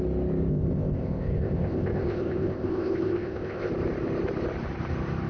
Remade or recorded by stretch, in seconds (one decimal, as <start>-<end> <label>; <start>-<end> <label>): 0.0-0.5 recorded; 0.5-3.7 remade; 3.7-5.3 recorded